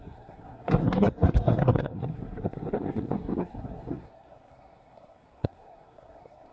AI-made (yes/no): yes